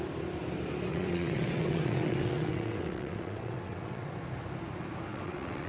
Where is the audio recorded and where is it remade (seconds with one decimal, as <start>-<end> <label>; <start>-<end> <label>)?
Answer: 0.0-0.9 recorded; 0.9-4.1 remade; 4.1-5.1 recorded; 5.1-5.7 remade